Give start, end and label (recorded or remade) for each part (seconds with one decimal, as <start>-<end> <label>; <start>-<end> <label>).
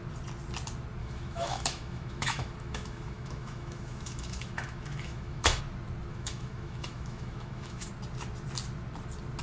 0.0-1.0 recorded; 1.0-5.6 remade; 5.6-6.1 recorded; 6.1-7.9 remade; 7.9-9.4 recorded